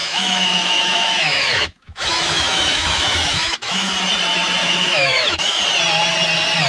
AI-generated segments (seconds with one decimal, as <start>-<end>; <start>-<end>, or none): 0.0-3.9; 4.6-5.6